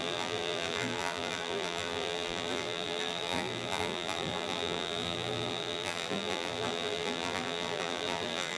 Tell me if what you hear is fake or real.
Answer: fake